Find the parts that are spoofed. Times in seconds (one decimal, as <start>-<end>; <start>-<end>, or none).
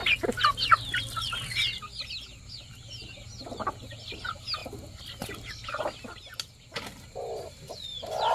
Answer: none